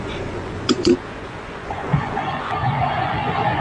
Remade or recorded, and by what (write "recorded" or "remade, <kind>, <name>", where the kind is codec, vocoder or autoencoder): remade, vocoder, Vocos